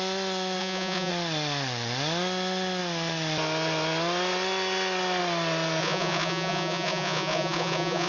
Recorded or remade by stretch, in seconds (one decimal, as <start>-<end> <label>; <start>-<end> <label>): 0.0-0.6 recorded; 0.6-1.1 remade; 1.1-5.8 recorded; 5.8-8.1 remade